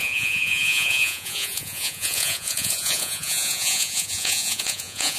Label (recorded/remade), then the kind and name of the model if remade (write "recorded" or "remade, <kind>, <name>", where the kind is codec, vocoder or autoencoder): remade, vocoder, Vocos